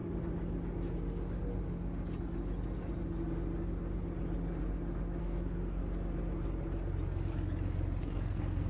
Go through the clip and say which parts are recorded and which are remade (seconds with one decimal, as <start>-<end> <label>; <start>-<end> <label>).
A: 0.0-5.2 recorded; 5.2-5.8 remade; 5.8-8.0 recorded; 8.0-8.7 remade

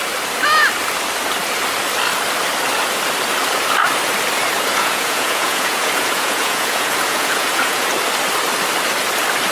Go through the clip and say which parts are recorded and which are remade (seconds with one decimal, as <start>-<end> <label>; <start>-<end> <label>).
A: 0.0-4.7 recorded; 4.7-7.9 remade; 7.9-9.5 recorded

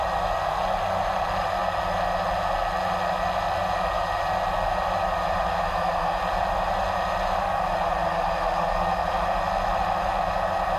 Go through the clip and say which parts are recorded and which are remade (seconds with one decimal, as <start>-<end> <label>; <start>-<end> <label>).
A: 0.0-10.8 recorded

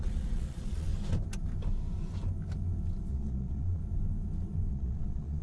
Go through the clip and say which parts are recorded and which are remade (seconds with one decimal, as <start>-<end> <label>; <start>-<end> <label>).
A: 0.0-0.9 remade; 0.9-3.1 recorded; 3.1-3.8 remade; 3.8-4.7 recorded; 4.7-5.4 remade

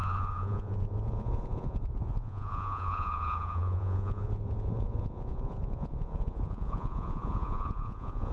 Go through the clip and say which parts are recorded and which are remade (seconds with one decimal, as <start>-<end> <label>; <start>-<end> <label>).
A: 0.0-8.3 remade

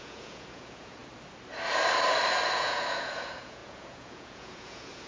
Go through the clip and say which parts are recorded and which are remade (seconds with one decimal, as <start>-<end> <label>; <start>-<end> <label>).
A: 0.0-1.0 remade; 1.0-2.5 recorded; 2.5-5.1 remade